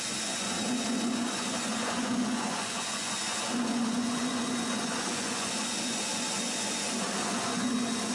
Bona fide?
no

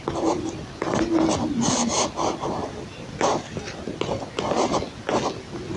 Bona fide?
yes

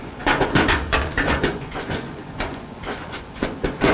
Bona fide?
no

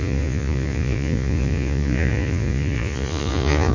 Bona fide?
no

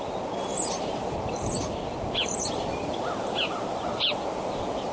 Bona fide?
yes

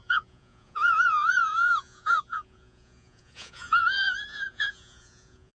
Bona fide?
no